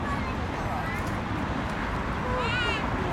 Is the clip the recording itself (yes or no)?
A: yes